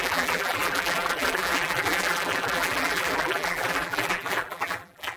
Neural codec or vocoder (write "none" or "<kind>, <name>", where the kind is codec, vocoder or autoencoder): vocoder, BigVGAN v2